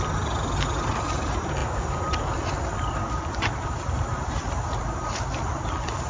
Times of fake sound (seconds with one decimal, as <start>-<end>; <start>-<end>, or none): 1.6-4.8